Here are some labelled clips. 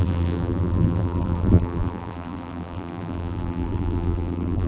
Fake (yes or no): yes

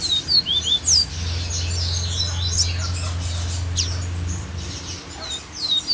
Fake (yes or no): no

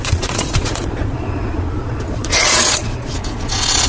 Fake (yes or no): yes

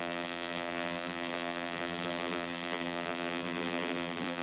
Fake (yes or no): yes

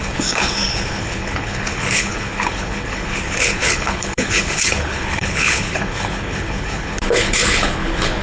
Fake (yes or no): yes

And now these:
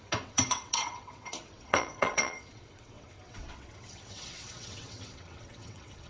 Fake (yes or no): yes